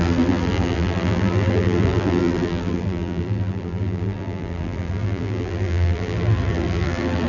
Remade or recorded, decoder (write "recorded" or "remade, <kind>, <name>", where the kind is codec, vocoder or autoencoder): remade, vocoder, BigVGAN v2